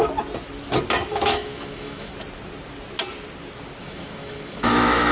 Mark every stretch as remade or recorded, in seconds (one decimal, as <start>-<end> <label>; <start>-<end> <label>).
0.0-1.1 recorded; 1.1-2.1 remade; 2.1-3.8 recorded; 3.8-5.1 remade